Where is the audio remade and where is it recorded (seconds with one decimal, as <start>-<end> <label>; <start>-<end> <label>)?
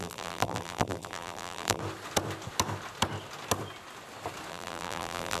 0.0-1.8 remade; 1.8-4.5 recorded; 4.5-5.4 remade